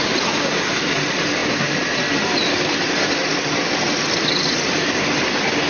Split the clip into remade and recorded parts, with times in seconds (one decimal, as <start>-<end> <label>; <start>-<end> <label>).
0.0-5.7 recorded